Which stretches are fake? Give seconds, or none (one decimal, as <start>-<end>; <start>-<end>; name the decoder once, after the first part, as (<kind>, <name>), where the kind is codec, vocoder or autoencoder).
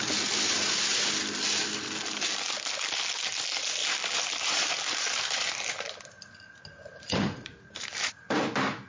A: 3.8-5.7 (vocoder, BigVGAN v2); 6.8-8.2